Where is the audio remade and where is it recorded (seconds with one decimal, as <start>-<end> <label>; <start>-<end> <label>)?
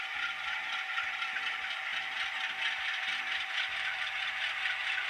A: 0.0-1.9 remade; 1.9-2.6 recorded; 2.6-5.1 remade